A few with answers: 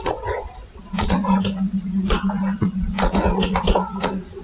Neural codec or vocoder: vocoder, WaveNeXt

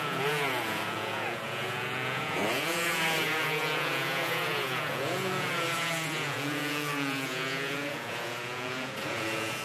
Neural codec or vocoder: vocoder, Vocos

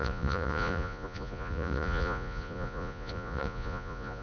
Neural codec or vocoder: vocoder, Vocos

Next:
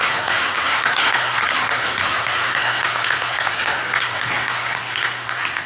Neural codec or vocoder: codec, SNAC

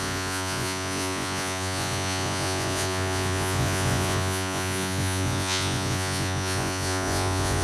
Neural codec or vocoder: vocoder, Vocos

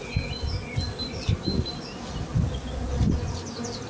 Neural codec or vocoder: none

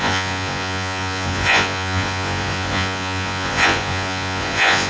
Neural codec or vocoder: vocoder, Vocos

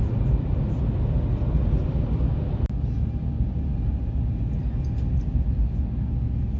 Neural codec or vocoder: none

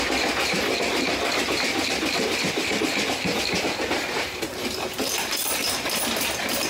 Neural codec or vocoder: none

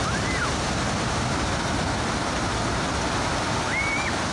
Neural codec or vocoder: none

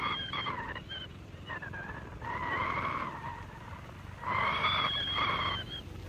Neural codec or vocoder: none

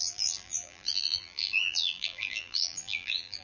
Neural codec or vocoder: vocoder, BigVGAN v2